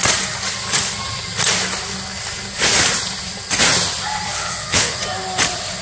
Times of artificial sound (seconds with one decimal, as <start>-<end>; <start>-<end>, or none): 4.3-5.0